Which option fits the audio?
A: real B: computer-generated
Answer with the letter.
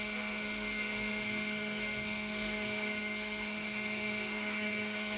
B